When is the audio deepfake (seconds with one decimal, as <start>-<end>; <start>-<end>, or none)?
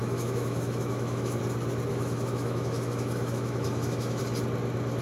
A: 0.0-1.4; 1.9-4.2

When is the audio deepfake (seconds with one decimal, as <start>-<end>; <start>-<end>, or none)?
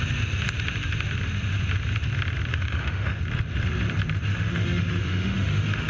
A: 2.5-3.2; 4.3-5.9